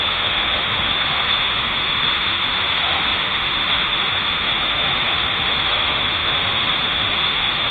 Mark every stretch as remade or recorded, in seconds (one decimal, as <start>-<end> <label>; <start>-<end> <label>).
0.0-7.7 remade